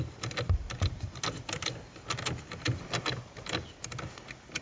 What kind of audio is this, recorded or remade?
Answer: recorded